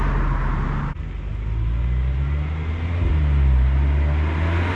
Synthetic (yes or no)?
no